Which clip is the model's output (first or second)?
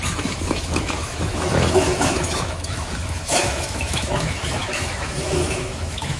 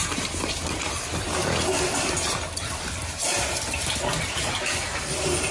first